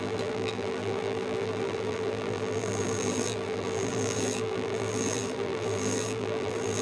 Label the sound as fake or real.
fake